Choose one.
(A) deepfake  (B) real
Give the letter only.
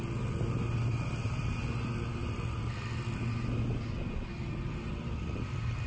B